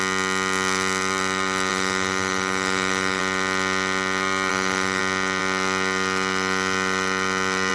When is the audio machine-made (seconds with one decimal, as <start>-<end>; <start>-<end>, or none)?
1.7-3.2; 4.5-5.0